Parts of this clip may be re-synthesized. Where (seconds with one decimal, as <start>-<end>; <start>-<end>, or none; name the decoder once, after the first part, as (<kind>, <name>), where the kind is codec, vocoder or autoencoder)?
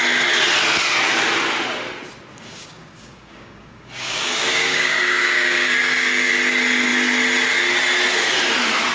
2.3-6.3 (codec, DAC)